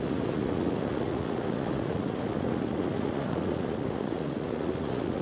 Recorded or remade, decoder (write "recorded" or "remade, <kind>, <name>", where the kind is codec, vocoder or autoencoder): remade, vocoder, Vocos